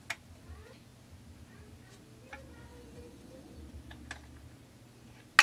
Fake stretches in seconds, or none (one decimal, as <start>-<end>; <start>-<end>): 2.7-3.6

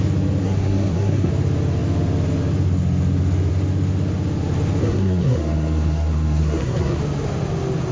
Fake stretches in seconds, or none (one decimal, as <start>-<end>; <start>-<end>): 0.4-1.3; 4.8-7.0